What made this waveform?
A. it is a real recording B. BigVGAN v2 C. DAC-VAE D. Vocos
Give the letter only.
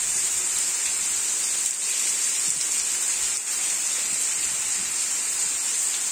A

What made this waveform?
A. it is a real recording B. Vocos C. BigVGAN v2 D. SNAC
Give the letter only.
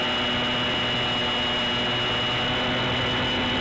A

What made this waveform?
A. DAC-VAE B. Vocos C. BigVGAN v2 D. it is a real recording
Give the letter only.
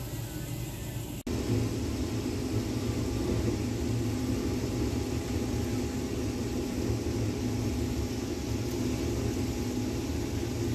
D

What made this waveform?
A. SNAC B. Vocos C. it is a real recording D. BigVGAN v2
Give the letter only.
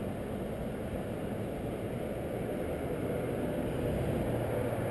C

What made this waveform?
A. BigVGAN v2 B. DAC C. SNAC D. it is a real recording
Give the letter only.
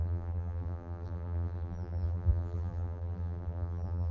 A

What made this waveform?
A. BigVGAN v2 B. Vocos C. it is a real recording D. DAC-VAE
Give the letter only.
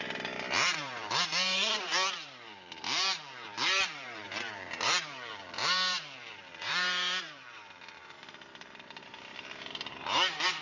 A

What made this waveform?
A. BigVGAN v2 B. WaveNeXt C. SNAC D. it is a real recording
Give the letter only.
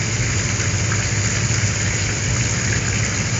D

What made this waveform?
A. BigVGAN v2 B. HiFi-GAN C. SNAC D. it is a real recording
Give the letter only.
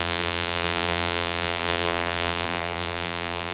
A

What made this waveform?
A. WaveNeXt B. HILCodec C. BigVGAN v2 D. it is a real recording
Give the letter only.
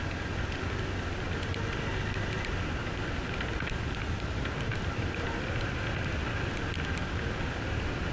D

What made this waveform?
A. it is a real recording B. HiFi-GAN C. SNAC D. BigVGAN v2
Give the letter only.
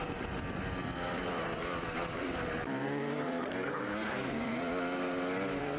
D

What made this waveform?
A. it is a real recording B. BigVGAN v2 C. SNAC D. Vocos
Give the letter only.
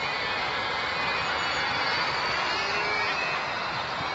A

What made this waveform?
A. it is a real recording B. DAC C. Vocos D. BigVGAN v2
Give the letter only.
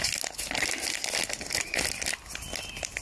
A